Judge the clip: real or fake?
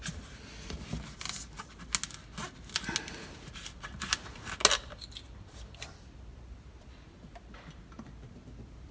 real